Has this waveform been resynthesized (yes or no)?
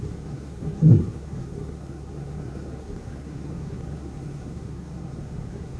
yes